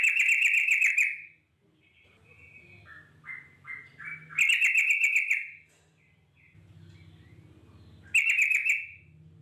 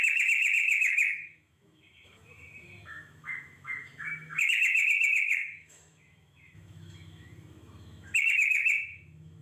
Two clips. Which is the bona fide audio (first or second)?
first